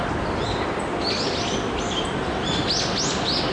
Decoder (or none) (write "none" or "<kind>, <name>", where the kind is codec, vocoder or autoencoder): none